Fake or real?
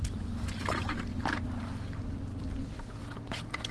real